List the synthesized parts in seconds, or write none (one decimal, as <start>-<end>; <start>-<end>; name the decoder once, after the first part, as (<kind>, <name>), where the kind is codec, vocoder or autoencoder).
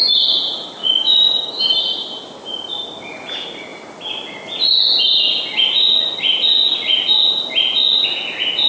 0.8-1.6 (codec, DAC)